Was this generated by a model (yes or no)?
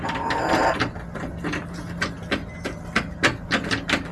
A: no